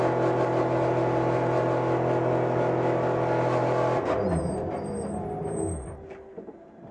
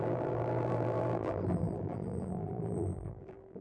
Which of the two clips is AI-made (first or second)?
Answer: second